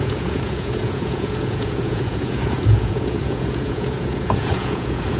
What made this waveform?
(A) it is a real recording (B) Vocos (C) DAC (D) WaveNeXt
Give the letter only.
B